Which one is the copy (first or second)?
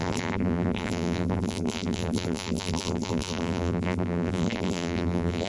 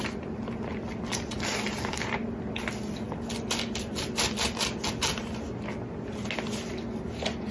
first